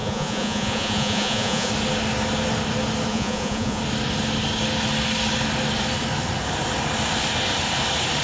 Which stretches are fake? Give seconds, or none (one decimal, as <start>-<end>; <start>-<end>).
0.0-1.7; 3.1-3.8